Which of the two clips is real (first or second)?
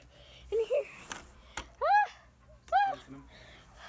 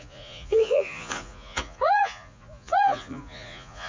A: first